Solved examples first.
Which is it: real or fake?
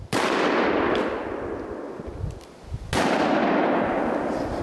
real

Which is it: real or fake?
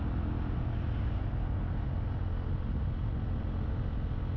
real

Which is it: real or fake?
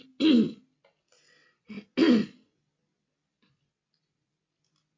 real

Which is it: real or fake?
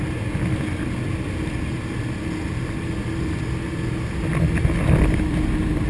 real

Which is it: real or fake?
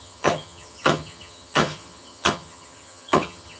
fake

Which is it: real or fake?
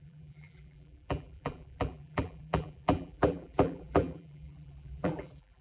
fake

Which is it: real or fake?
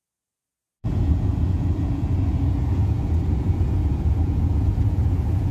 fake